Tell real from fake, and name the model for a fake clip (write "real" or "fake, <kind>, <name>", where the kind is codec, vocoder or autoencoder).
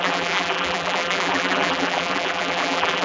fake, vocoder, BigVGAN v2